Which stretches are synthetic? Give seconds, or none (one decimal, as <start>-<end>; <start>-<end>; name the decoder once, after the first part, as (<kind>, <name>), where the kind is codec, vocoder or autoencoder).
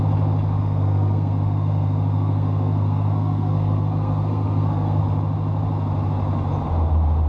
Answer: 0.6-5.0 (codec, SNAC)